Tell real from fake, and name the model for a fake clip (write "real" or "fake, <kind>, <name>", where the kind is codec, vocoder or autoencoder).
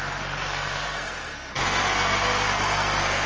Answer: fake, codec, SNAC